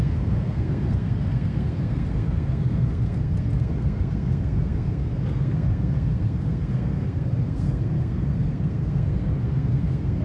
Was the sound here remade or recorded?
remade